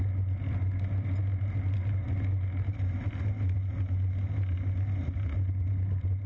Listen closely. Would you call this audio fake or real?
real